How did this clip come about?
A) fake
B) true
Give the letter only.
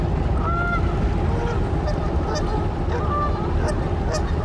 B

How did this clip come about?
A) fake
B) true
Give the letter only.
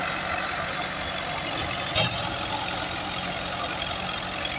B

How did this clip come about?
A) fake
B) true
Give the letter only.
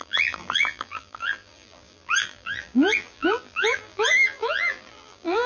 A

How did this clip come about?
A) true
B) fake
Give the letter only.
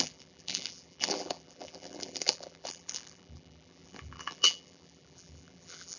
B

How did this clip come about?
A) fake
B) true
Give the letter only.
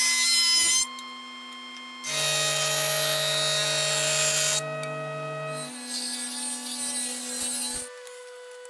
B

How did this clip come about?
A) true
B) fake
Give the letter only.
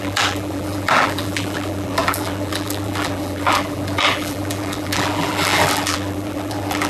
B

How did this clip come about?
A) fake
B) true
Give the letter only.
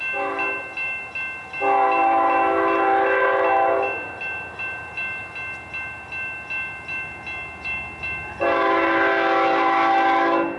B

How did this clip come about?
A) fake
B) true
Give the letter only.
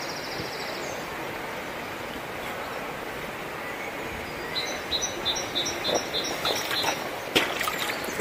B